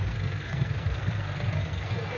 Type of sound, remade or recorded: remade